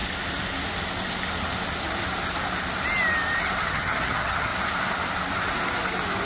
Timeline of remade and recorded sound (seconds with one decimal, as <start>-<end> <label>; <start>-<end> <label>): 0.0-3.6 recorded; 3.6-4.5 remade; 4.5-6.3 recorded